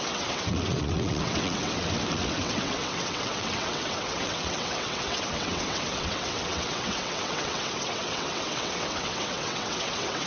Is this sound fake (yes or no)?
yes